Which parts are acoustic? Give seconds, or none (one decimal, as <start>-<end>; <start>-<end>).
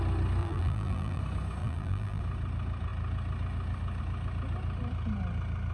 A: 0.0-0.4; 1.2-1.6; 2.2-5.7